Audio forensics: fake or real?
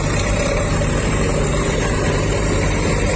fake